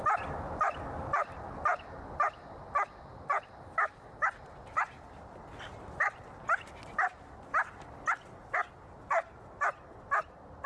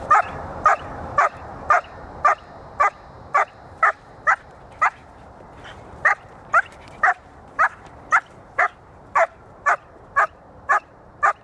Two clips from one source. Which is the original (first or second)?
first